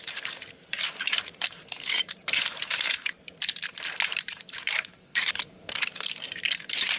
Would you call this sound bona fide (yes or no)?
no